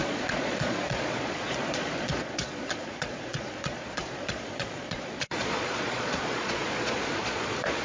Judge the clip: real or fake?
fake